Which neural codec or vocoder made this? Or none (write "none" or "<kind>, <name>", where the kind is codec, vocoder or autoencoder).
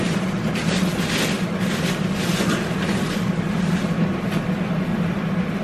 vocoder, BigVGAN v2